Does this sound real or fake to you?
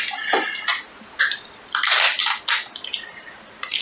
real